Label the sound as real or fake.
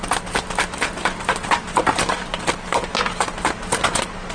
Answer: real